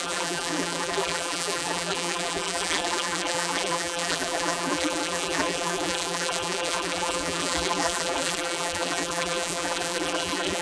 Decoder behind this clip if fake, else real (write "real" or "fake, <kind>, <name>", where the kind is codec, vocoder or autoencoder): fake, vocoder, BigVGAN v2